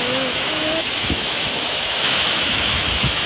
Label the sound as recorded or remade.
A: remade